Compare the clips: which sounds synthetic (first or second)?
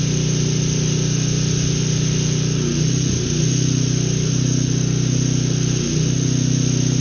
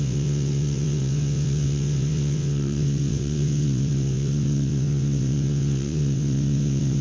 second